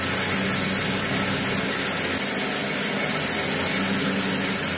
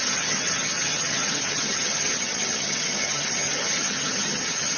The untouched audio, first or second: first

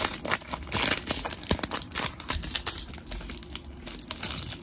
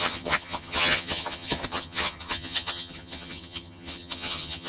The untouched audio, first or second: first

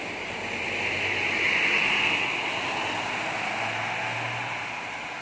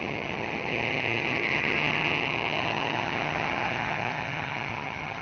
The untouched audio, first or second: first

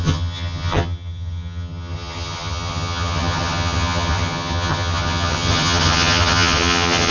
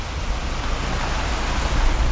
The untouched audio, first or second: second